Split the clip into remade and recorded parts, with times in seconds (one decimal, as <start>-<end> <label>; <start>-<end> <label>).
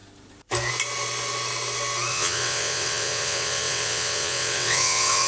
0.0-2.1 recorded; 2.1-5.3 remade